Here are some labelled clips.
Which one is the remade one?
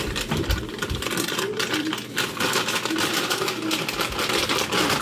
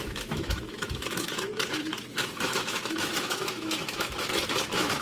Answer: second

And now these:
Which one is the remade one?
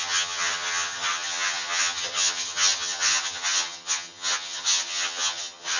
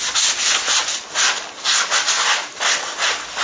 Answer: first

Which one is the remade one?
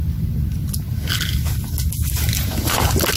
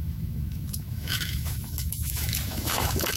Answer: second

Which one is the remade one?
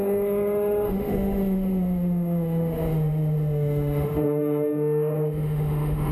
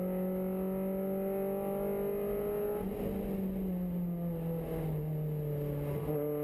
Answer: first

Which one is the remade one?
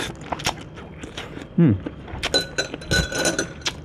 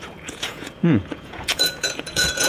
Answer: second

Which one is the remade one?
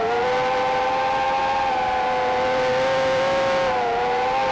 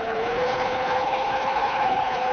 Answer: second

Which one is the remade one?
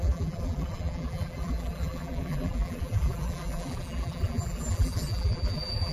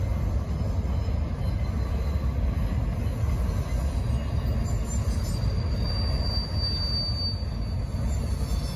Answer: first